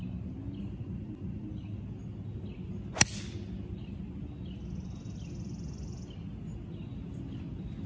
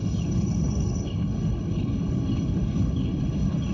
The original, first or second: first